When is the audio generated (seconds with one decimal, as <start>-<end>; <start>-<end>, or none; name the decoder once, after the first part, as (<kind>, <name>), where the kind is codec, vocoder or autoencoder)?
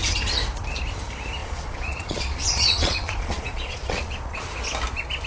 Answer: 1.4-4.6 (vocoder, Vocos)